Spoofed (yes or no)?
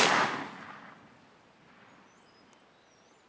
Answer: no